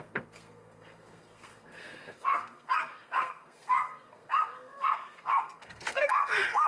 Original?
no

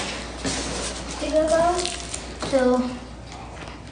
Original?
yes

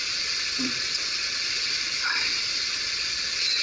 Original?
no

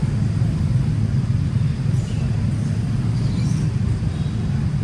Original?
yes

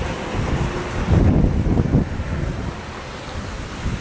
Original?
yes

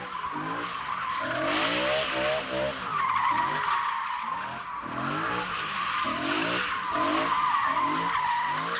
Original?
yes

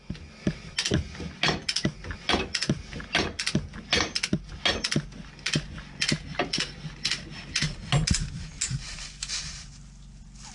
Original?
yes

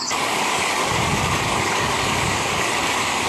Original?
no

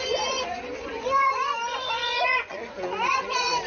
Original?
no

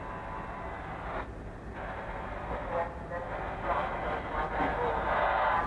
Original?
yes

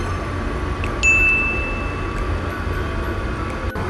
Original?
yes